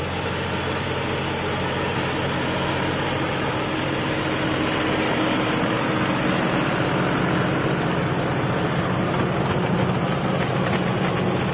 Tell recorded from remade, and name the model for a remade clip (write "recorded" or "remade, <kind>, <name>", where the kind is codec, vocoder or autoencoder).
recorded